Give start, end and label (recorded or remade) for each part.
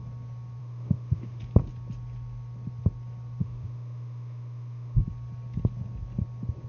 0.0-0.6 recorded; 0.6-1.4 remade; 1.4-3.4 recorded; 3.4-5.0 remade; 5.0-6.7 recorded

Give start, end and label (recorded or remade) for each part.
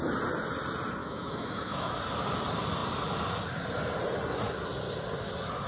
0.0-1.0 recorded; 1.0-2.0 remade; 2.0-5.7 recorded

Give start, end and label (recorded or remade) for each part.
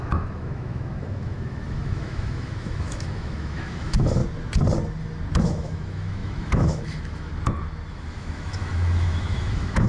0.0-4.2 remade; 4.2-5.4 recorded; 5.4-7.3 remade; 7.3-7.9 recorded; 7.9-9.9 remade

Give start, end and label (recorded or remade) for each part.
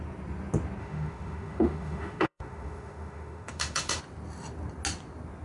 0.0-0.8 recorded; 0.8-4.0 remade; 4.0-5.4 recorded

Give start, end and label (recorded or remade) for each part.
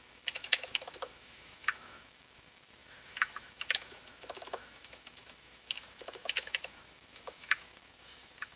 0.0-8.6 remade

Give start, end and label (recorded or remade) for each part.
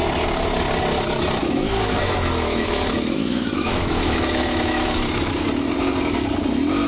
0.0-1.4 recorded; 1.4-5.5 remade; 5.5-6.9 recorded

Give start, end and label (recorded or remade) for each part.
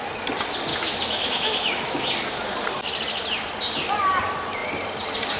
0.0-0.7 recorded; 0.7-2.0 remade; 2.0-5.4 recorded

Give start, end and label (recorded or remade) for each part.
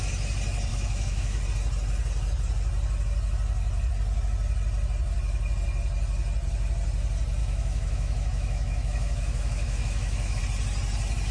0.0-0.7 recorded; 0.7-1.4 remade; 1.4-7.4 recorded; 7.4-10.4 remade; 10.4-11.3 recorded